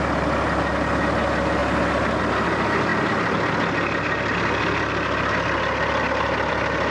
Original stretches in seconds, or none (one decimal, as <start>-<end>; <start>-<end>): 0.0-6.9